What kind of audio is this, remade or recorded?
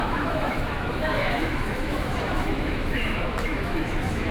remade